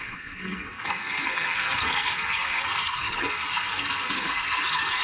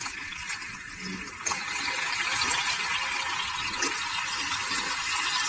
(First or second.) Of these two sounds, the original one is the second